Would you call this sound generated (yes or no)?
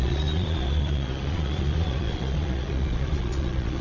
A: yes